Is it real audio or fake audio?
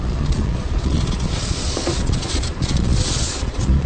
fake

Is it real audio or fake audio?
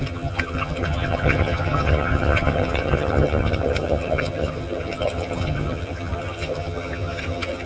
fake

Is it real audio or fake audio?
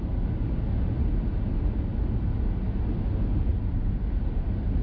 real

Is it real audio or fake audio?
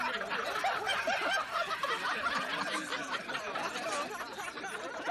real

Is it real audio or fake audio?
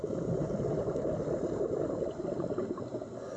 real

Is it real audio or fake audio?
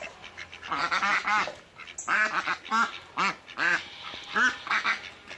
real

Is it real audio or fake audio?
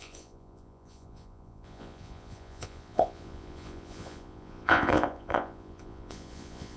fake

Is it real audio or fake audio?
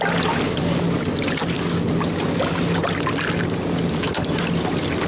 real